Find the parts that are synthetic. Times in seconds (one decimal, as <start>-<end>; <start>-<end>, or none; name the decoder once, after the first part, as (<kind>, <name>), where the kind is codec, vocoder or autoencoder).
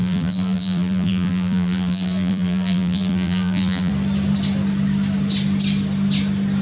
0.0-3.9 (vocoder, BigVGAN v2)